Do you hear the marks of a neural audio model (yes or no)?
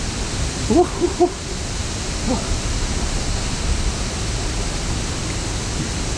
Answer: no